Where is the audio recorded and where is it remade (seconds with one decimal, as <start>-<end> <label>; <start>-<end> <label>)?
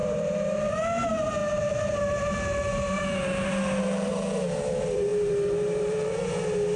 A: 0.0-6.8 remade